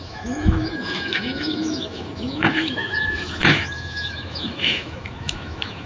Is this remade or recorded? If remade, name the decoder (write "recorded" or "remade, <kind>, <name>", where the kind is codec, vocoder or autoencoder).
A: remade, autoencoder, DAC-VAE